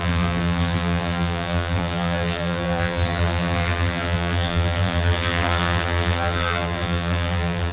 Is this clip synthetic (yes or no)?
yes